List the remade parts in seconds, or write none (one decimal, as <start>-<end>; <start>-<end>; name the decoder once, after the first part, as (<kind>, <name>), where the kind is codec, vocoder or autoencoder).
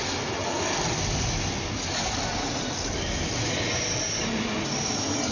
none